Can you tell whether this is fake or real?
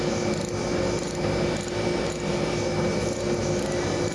real